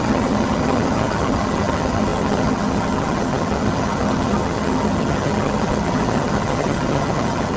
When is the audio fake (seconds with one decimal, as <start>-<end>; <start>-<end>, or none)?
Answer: 0.0-7.6